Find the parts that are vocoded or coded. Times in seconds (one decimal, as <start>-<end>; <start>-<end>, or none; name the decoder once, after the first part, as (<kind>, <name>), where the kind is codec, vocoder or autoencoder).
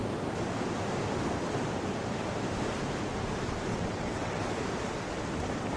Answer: 3.7-4.5 (vocoder, WaveNeXt)